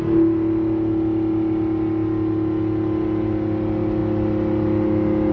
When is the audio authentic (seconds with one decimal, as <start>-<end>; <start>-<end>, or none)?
0.0-5.3